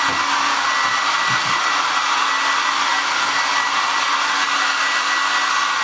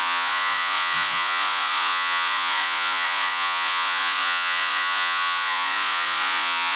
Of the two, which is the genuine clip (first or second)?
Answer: first